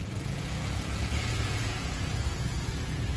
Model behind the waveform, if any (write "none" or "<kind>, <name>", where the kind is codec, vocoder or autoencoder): vocoder, Vocos